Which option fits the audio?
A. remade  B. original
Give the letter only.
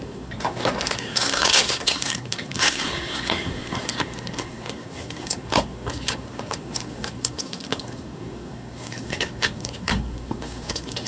A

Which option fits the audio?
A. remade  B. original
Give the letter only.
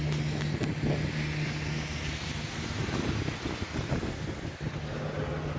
B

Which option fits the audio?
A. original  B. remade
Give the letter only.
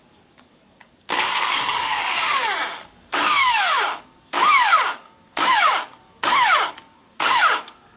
B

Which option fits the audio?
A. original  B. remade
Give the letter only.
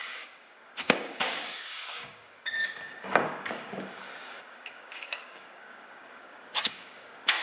B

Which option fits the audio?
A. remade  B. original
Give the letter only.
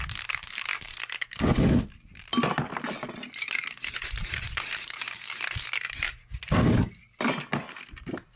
B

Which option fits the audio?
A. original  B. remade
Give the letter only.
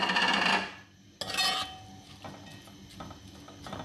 A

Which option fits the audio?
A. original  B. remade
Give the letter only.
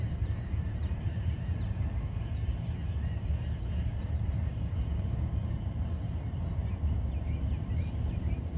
B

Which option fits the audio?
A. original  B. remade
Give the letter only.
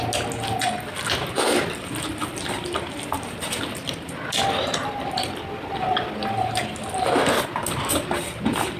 A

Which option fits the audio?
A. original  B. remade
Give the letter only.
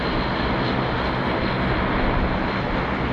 A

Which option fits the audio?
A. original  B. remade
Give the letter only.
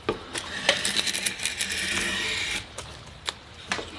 A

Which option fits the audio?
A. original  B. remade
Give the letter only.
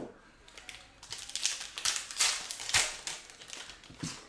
A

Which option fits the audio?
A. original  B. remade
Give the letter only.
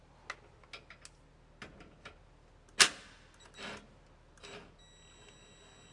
A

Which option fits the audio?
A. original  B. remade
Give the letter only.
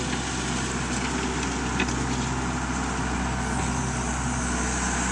A